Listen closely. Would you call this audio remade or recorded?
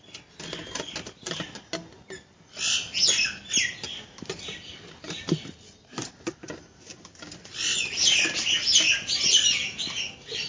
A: recorded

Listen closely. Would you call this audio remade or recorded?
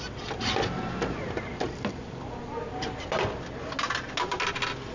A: recorded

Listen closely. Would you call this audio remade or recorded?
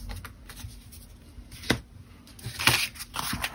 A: recorded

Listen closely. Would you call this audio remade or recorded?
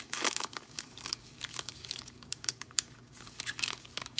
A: remade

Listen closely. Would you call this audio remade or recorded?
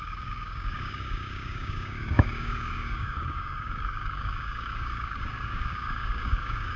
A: remade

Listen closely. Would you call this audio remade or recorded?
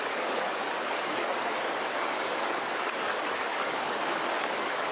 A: remade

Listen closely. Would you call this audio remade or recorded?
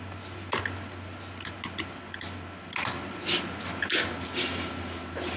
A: recorded